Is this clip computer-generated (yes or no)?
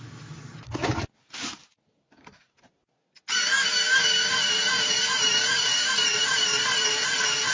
no